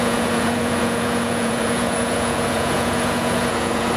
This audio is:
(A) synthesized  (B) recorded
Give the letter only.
A